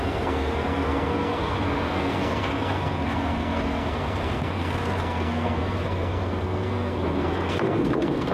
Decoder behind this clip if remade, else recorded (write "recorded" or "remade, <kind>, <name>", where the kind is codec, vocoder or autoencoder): remade, codec, SNAC